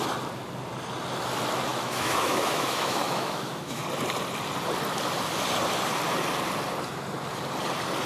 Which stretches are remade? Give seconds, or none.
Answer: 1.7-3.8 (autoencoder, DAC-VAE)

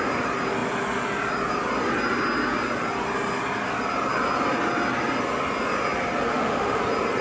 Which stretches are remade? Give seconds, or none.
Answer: 6.3-6.8 (autoencoder, DAC-VAE)

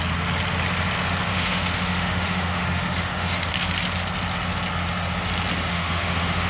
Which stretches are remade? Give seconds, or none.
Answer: 1.3-3.5 (autoencoder, DAC-VAE); 5.7-6.5